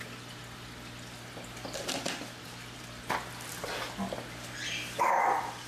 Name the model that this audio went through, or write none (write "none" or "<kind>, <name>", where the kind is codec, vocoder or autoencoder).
none